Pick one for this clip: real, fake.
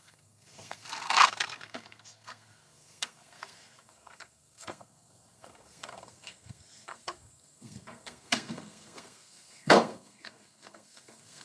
fake